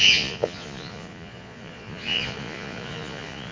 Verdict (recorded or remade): remade